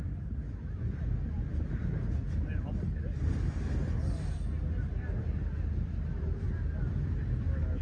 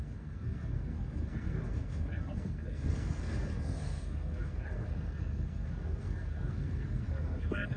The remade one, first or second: second